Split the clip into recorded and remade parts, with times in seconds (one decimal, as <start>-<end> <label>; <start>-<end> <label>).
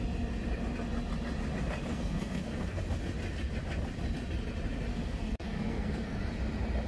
0.0-1.9 recorded; 1.9-2.8 remade; 2.8-4.9 recorded; 4.9-6.2 remade; 6.2-6.9 recorded